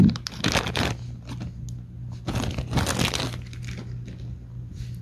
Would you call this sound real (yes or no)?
yes